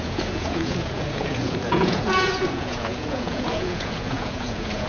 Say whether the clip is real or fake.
fake